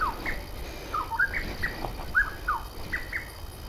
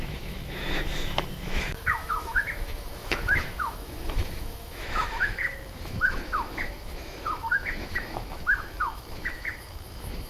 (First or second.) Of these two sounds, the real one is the first